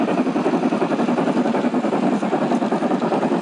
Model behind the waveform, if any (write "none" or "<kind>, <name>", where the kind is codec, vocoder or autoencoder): none